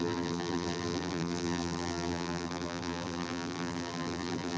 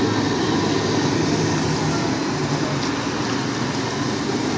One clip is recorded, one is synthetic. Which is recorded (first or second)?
second